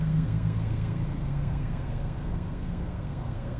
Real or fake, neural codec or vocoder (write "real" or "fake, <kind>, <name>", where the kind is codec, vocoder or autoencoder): fake, codec, SNAC